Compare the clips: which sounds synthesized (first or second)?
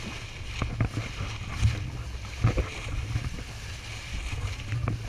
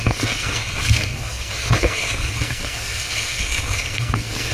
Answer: second